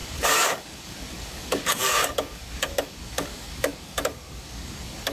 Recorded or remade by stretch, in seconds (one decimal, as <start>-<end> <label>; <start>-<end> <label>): 0.0-5.1 remade